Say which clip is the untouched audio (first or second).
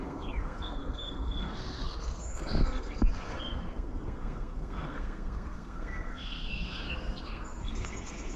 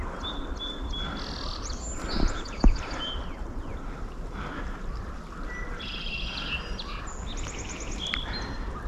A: second